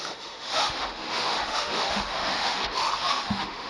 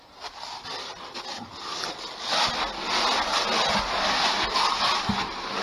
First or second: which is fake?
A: first